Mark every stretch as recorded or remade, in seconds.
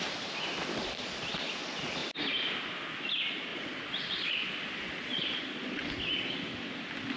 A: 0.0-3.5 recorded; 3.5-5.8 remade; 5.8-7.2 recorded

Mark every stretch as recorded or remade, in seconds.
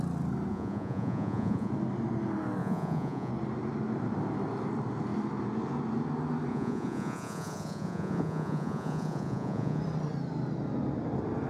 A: 0.0-0.5 recorded; 0.5-1.7 remade; 1.7-2.6 recorded; 2.6-3.3 remade; 3.3-6.5 recorded; 6.5-9.8 remade; 9.8-11.5 recorded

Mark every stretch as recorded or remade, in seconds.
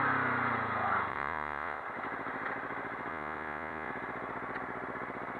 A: 0.0-1.1 recorded; 1.1-1.8 remade; 1.8-3.1 recorded; 3.1-3.9 remade; 3.9-5.4 recorded